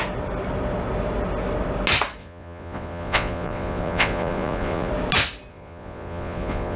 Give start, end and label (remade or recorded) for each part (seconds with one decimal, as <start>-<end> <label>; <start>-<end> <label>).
0.0-2.2 recorded; 2.2-4.9 remade; 4.9-5.5 recorded; 5.5-6.8 remade